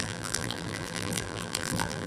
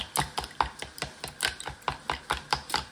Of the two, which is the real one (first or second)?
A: second